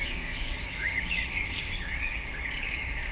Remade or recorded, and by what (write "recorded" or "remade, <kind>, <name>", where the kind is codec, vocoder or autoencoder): remade, codec, DAC